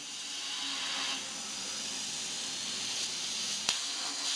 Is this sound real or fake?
real